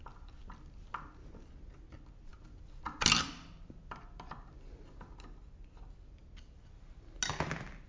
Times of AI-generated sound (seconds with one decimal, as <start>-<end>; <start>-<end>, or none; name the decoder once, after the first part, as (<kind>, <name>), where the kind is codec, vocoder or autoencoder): none